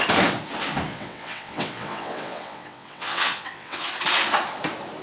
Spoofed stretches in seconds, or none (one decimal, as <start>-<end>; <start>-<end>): 0.9-3.9